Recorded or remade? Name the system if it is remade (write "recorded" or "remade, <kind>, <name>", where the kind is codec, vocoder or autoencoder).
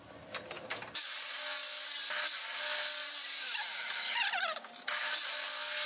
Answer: recorded